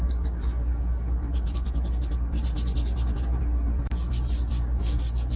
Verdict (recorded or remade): recorded